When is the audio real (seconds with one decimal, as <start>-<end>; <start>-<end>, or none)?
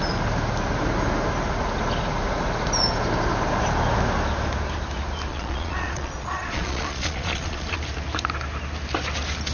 0.0-5.3; 7.8-9.5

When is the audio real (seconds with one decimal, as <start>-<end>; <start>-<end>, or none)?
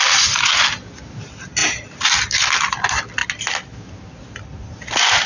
0.0-5.3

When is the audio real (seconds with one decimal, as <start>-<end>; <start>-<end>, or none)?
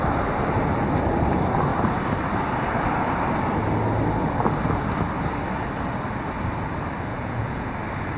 0.0-7.1; 7.7-8.2